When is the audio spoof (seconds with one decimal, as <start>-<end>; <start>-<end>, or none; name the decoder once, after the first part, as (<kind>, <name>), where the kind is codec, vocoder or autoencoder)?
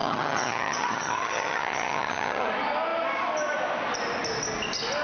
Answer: 0.0-2.5 (vocoder, HiFi-GAN)